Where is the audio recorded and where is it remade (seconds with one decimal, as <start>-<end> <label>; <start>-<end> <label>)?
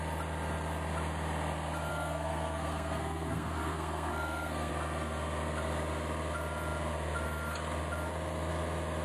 0.0-1.9 recorded; 1.9-4.7 remade; 4.7-9.0 recorded